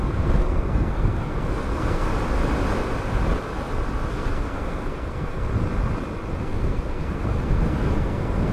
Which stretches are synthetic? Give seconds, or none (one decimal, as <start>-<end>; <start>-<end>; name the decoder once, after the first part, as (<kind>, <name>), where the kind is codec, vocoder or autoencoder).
0.0-2.1 (codec, SNAC); 4.1-5.5; 6.4-8.5